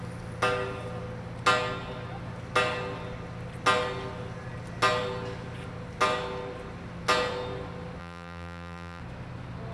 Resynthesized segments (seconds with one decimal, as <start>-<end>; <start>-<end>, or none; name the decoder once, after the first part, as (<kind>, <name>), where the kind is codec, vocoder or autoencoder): 8.0-9.0 (vocoder, BigVGAN v2)